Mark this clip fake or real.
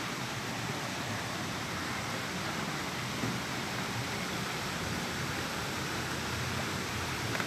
fake